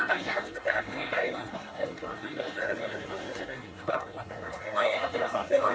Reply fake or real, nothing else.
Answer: fake